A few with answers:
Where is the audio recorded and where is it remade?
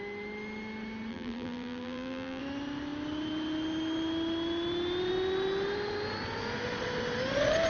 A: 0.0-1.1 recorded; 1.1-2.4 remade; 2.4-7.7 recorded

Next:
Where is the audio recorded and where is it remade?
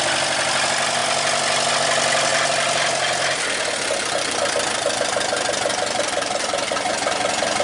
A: 0.0-7.6 recorded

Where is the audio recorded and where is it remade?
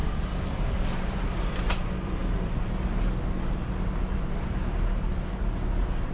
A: 0.0-2.6 remade; 2.6-6.1 recorded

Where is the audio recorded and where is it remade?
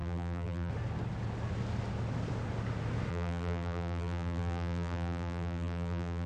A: 0.0-0.7 remade; 0.7-3.1 recorded; 3.1-6.3 remade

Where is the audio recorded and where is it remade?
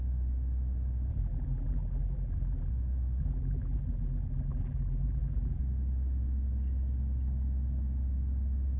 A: 0.0-1.1 recorded; 1.1-2.7 remade; 2.7-3.2 recorded; 3.2-5.6 remade; 5.6-8.8 recorded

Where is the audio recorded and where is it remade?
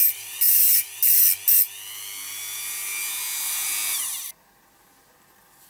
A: 0.0-1.0 remade; 1.0-5.7 recorded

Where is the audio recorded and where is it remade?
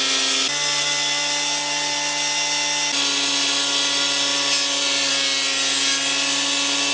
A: 0.0-4.3 recorded; 4.3-5.1 remade; 5.1-6.9 recorded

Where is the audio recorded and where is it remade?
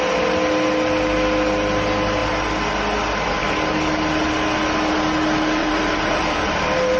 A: 0.0-5.6 recorded; 5.6-7.0 remade